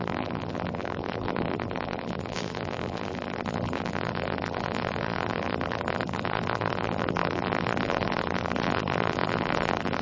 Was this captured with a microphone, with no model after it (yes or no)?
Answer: no